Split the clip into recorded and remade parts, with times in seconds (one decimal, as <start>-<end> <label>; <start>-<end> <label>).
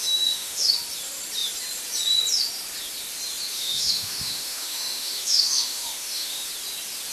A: 0.0-0.7 remade; 0.7-3.5 recorded; 3.5-6.5 remade; 6.5-7.1 recorded